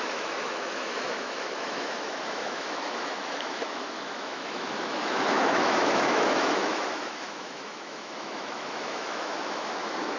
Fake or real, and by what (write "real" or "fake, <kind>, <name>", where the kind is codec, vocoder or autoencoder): fake, autoencoder, DAC-VAE